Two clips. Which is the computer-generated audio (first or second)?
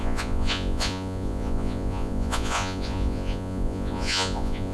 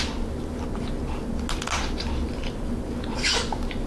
first